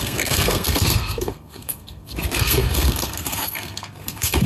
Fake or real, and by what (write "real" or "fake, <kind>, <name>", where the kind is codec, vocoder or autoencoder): fake, codec, SNAC